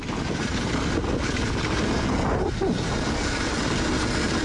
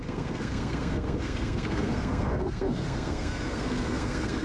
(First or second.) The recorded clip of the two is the first